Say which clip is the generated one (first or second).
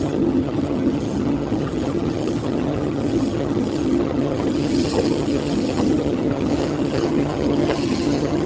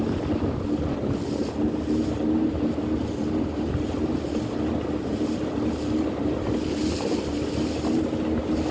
first